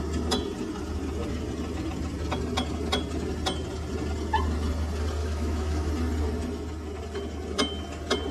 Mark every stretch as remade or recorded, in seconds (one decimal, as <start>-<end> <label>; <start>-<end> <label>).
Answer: 0.0-5.2 recorded; 5.2-5.9 remade; 5.9-8.3 recorded